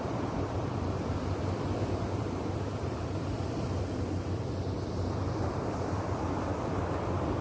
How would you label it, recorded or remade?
remade